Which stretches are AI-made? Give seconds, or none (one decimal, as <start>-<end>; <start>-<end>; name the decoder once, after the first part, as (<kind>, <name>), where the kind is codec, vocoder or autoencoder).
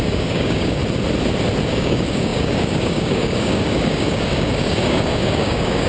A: 0.0-0.8 (codec, DAC); 1.7-5.9